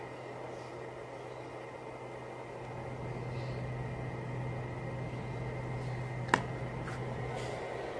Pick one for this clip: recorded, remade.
recorded